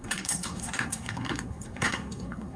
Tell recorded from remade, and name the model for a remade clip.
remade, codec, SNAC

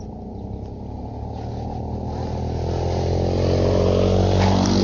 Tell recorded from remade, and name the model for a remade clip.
recorded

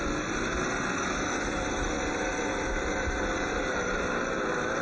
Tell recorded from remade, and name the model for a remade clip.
recorded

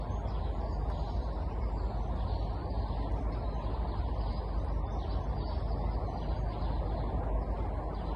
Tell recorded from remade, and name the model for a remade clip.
recorded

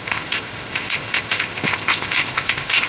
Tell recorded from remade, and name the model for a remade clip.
remade, codec, ZipCodec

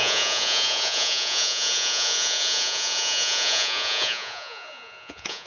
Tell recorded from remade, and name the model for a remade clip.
remade, vocoder, Vocos